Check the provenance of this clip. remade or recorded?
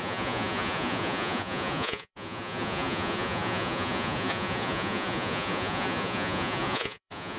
remade